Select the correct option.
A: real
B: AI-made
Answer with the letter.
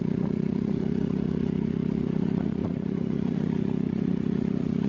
B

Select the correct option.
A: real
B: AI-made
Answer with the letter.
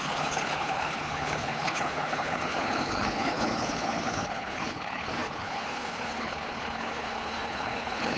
B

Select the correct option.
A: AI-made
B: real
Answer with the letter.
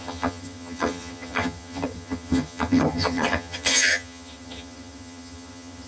A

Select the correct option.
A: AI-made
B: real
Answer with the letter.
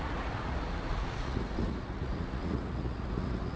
A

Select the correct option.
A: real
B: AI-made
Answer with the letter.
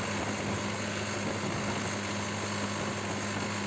A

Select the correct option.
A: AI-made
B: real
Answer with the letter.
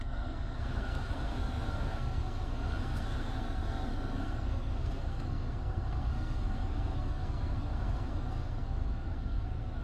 A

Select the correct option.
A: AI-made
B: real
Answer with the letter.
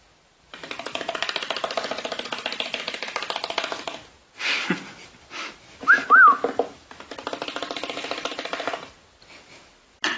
B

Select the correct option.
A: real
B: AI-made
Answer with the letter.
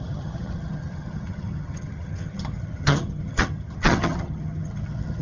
B